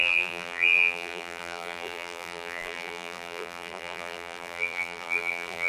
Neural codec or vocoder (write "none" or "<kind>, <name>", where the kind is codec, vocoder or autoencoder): vocoder, BigVGAN v2